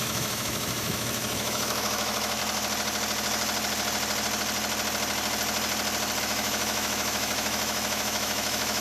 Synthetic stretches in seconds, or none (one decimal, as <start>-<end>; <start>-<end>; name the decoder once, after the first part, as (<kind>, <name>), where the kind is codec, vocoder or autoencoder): 0.0-2.4 (autoencoder, DAC-VAE); 6.2-8.8